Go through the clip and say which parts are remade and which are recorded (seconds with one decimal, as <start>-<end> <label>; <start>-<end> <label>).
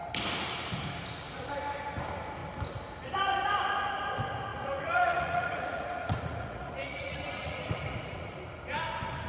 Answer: 0.0-4.5 recorded; 4.5-8.4 remade; 8.4-9.3 recorded